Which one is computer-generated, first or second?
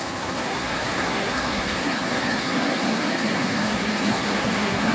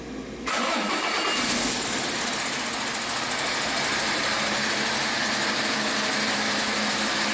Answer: first